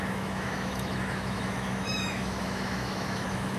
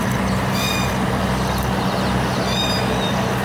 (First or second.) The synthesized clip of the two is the first